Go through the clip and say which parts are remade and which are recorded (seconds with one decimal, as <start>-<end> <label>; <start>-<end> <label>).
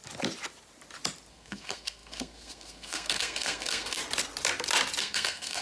0.0-1.3 recorded; 1.3-4.0 remade; 4.0-5.0 recorded; 5.0-5.6 remade